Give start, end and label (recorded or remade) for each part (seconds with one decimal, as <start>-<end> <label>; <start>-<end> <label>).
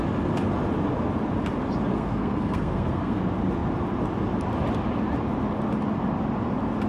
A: 0.0-1.9 recorded; 1.9-3.2 remade; 3.2-6.9 recorded